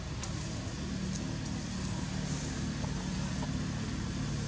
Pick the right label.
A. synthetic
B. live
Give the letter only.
B